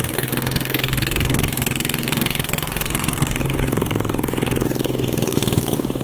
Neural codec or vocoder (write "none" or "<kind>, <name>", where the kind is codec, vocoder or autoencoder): codec, DAC